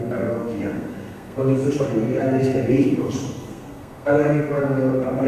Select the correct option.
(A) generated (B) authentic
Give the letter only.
A